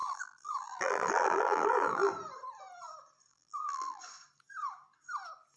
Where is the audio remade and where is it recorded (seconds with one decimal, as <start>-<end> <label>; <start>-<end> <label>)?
0.0-2.1 remade; 2.1-3.3 recorded; 3.3-4.0 remade; 4.0-5.6 recorded